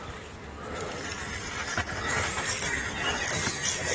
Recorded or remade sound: recorded